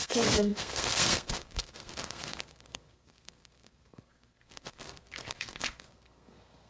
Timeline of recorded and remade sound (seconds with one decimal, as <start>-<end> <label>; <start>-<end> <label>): 0.0-6.7 remade